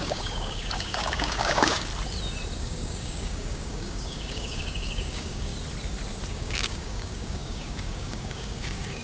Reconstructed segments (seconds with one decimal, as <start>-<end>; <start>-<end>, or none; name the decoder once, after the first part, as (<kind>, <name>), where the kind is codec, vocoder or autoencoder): 0.0-1.9 (codec, DAC); 2.6-5.5; 6.3-9.0